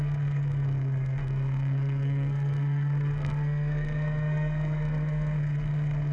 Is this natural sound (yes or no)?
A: no